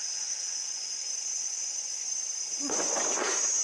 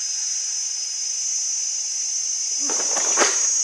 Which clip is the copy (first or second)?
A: first